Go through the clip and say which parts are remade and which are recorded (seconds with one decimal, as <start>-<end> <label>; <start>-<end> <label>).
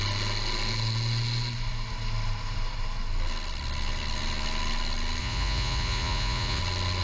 0.0-5.2 recorded; 5.2-6.6 remade; 6.6-7.0 recorded